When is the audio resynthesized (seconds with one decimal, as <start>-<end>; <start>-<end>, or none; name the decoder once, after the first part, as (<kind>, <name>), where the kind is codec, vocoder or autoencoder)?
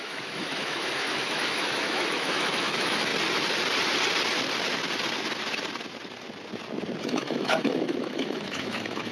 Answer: 0.0-3.1 (autoencoder, DAC-VAE); 7.0-9.1